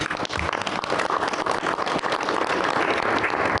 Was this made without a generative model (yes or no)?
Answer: yes